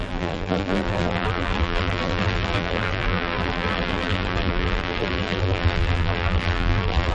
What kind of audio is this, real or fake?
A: fake